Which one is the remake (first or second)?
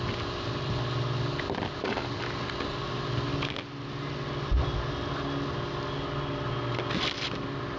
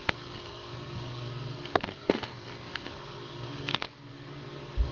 second